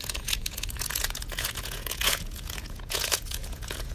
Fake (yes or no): yes